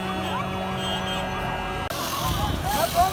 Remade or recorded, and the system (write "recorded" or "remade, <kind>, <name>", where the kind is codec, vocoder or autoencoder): recorded